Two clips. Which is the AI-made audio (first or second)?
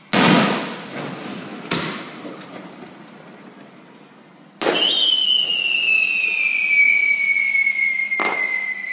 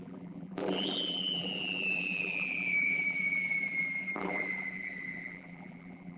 second